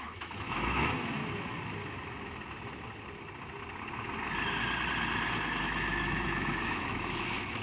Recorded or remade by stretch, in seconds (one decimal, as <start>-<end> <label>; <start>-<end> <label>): 0.0-1.2 remade; 1.2-5.6 recorded; 5.6-7.6 remade

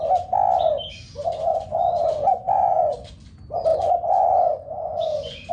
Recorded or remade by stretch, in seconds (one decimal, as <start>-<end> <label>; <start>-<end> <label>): 0.0-1.5 recorded; 1.5-3.1 remade; 3.1-3.7 recorded; 3.7-5.5 remade

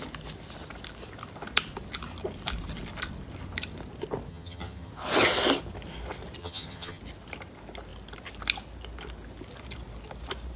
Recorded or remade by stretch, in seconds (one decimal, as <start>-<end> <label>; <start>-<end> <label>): 0.0-4.3 recorded; 4.3-4.9 remade; 4.9-6.4 recorded; 6.4-7.0 remade; 7.0-10.6 recorded

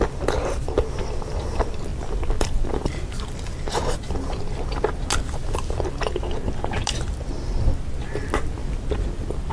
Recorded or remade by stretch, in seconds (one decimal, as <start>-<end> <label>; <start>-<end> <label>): 0.0-1.9 recorded; 1.9-4.4 remade; 4.4-9.5 recorded